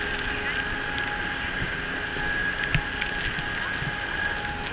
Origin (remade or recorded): recorded